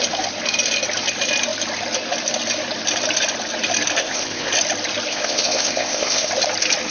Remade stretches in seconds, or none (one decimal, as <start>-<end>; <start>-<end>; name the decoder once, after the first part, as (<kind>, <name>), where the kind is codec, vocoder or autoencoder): 4.0-4.5 (codec, ZipCodec); 5.1-6.3